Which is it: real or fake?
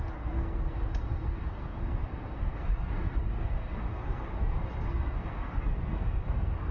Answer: fake